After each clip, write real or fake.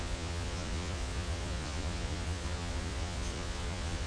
fake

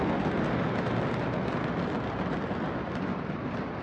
real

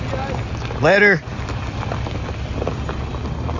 real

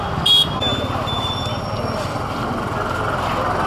real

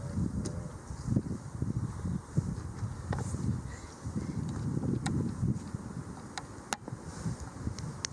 real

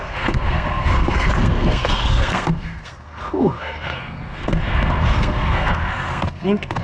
fake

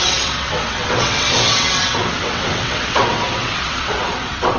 fake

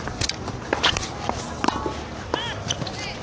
real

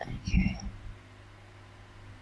real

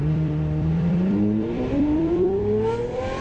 fake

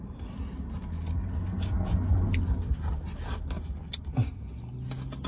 real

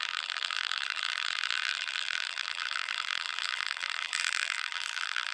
fake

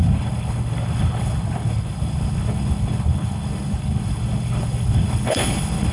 fake